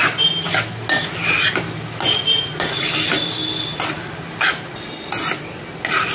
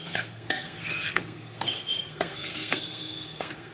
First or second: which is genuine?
first